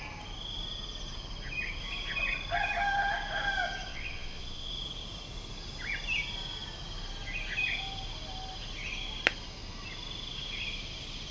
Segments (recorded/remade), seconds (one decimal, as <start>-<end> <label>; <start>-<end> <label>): 0.0-3.9 recorded; 3.9-4.7 remade; 4.7-11.3 recorded